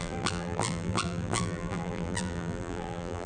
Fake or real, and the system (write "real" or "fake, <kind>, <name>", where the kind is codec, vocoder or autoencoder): fake, vocoder, BigVGAN v2